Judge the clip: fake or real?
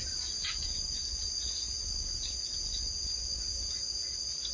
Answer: real